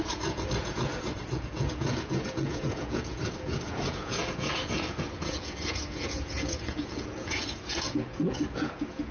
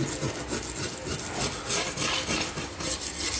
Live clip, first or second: second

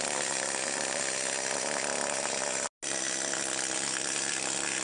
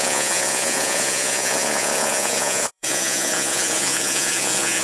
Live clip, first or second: first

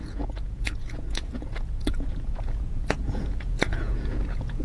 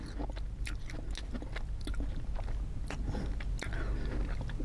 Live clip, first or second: second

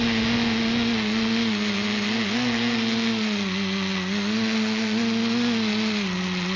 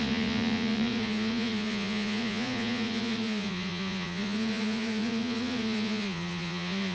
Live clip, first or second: first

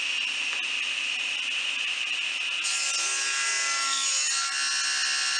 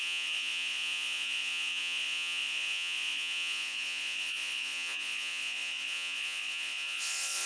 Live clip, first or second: first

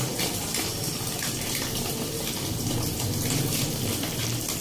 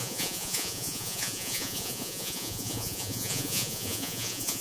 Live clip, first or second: first